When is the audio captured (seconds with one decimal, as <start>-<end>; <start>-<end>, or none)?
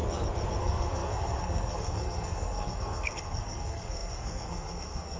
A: 0.0-0.6